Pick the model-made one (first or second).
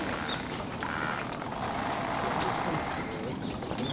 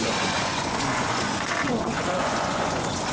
second